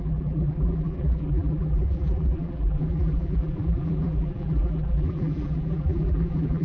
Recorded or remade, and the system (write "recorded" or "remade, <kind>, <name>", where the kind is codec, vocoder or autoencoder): remade, vocoder, BigVGAN v2